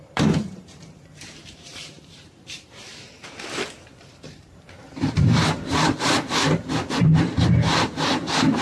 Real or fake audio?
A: fake